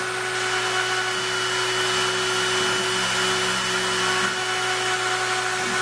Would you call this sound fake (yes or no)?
no